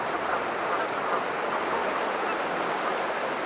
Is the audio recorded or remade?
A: recorded